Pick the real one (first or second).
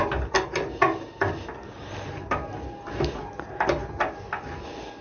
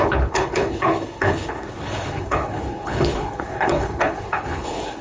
first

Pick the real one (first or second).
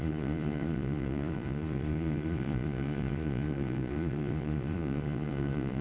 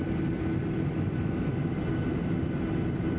second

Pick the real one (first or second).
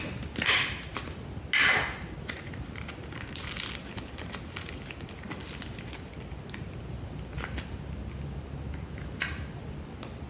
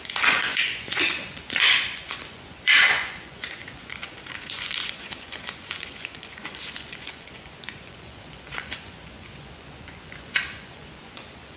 first